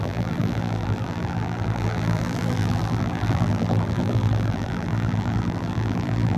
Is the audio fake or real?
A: fake